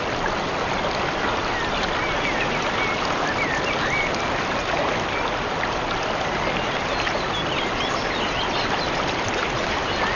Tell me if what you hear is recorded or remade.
recorded